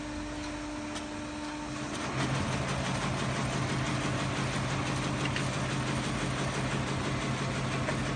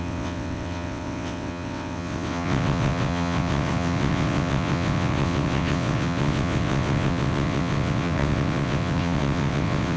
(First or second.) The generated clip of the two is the second